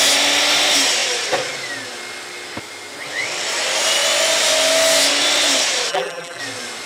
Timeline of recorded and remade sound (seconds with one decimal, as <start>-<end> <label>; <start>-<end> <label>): 0.0-5.9 recorded; 5.9-6.4 remade; 6.4-6.9 recorded